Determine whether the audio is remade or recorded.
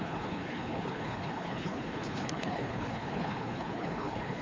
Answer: remade